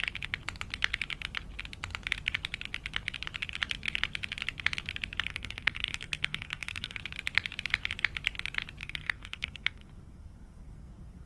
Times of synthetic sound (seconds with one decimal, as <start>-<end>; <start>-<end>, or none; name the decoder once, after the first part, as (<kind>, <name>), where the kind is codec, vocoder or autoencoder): 5.3-7.0 (codec, SNAC); 8.8-11.3